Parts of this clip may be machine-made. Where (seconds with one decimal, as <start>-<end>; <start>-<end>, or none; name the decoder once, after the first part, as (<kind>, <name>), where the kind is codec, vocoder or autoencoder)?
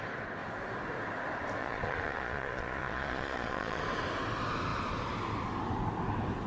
1.6-3.8 (vocoder, Vocos)